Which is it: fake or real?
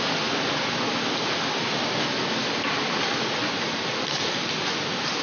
real